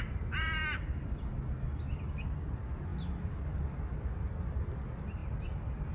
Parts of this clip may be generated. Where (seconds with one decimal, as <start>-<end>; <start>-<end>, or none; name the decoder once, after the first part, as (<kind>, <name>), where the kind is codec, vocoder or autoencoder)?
none